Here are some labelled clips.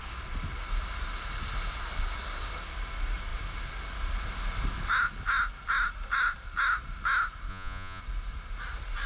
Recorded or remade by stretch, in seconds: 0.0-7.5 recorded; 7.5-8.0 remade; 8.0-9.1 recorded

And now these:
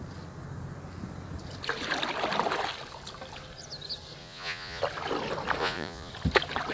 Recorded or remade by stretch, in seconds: 0.0-4.2 recorded; 4.2-4.8 remade; 4.8-5.6 recorded; 5.6-6.1 remade; 6.1-6.7 recorded

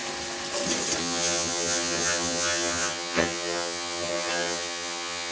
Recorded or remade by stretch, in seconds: 0.0-1.0 recorded; 1.0-5.3 remade

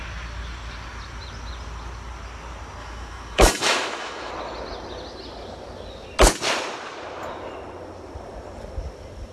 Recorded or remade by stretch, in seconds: 0.0-2.8 recorded; 2.8-4.3 remade; 4.3-9.3 recorded

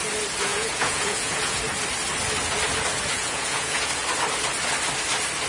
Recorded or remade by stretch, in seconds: 0.0-0.5 recorded; 0.5-1.6 remade; 1.6-3.1 recorded; 3.1-3.9 remade; 3.9-5.5 recorded

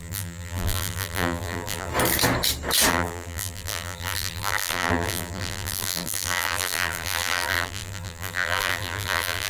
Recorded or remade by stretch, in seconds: 0.0-1.9 remade; 1.9-2.9 recorded; 2.9-9.5 remade

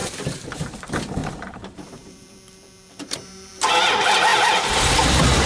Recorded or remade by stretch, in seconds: 0.0-0.7 remade; 0.7-1.2 recorded; 1.2-3.6 remade; 3.6-4.3 recorded; 4.3-5.5 remade